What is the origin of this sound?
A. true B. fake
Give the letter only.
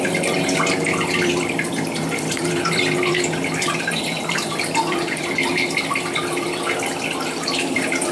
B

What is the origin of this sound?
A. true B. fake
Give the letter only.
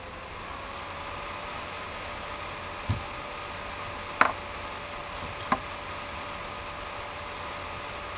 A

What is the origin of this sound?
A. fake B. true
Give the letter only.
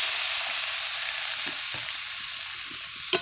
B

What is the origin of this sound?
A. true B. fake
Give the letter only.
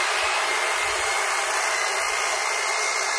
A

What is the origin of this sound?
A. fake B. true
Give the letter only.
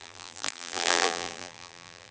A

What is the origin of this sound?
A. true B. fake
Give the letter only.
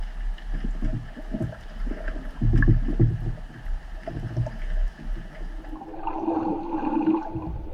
A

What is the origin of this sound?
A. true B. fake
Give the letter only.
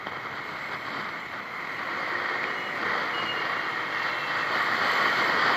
A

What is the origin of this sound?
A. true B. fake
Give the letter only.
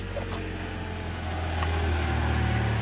A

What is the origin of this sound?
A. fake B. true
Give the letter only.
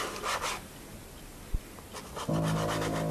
B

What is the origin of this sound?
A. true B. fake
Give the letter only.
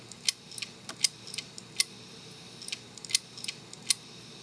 A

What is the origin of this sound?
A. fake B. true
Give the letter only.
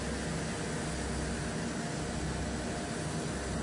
B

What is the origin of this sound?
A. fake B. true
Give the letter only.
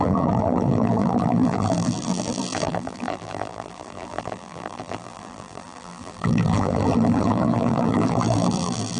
A